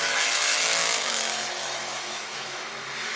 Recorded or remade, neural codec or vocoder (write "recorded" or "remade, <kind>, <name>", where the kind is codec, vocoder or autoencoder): remade, autoencoder, DAC-VAE